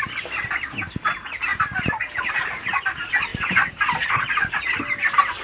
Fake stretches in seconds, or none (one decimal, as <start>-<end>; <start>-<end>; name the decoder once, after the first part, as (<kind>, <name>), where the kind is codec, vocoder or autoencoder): none